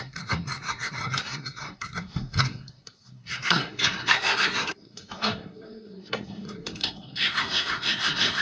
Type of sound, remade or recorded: remade